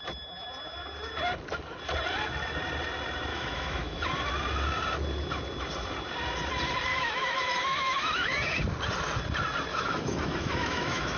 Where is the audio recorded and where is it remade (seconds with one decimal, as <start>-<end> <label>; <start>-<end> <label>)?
0.0-3.3 recorded; 3.3-4.1 remade; 4.1-6.9 recorded; 6.9-8.6 remade; 8.6-9.7 recorded; 9.7-11.2 remade